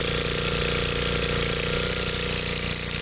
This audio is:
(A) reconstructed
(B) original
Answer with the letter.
B